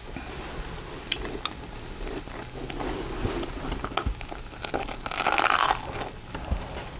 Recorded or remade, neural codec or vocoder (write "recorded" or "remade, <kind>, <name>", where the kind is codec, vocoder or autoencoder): recorded